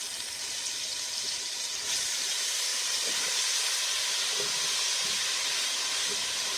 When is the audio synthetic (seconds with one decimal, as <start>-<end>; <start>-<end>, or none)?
0.9-1.4